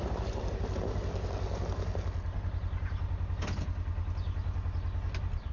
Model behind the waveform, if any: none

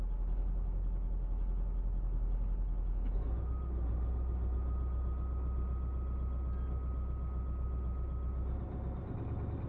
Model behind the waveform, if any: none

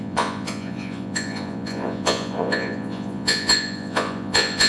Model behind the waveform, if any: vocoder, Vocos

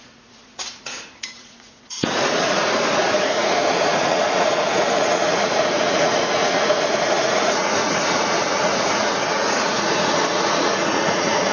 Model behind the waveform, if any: vocoder, Vocos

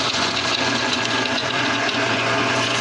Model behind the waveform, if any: vocoder, Vocos